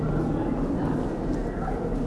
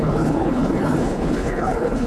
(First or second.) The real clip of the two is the first